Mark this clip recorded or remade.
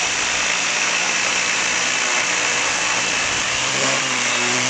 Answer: remade